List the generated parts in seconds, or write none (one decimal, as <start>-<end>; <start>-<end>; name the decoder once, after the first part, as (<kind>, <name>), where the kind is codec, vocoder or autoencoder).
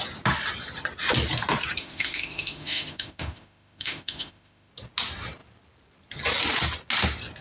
1.8-4.7 (autoencoder, DAC-VAE)